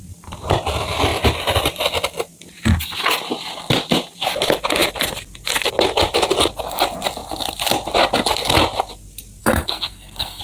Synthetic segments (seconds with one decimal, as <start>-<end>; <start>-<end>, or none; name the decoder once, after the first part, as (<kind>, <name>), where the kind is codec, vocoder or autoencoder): 9.4-10.4 (codec, SNAC)